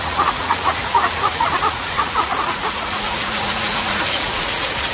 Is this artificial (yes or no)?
yes